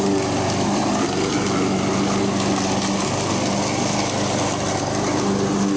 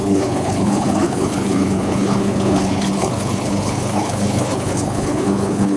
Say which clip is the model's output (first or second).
second